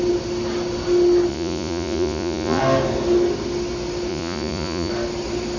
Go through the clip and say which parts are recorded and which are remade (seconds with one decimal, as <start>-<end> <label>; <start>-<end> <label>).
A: 0.0-1.3 recorded; 1.3-2.6 remade; 2.6-4.1 recorded; 4.1-4.9 remade; 4.9-5.6 recorded